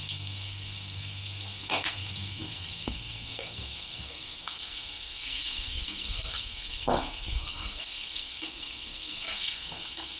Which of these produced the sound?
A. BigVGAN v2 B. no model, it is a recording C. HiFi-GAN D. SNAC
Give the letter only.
D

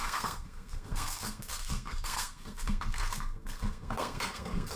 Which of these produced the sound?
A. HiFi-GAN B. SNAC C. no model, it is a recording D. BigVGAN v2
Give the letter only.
B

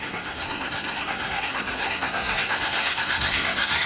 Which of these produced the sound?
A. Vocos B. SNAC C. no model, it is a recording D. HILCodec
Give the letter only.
B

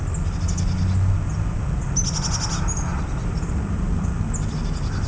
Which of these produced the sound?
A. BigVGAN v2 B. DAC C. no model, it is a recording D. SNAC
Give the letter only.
C